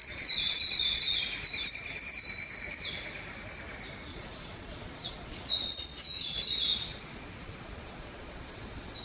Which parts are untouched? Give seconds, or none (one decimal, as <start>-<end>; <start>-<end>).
1.2-4.1